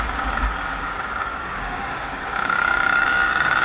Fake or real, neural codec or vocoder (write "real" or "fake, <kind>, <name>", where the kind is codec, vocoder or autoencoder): fake, codec, DAC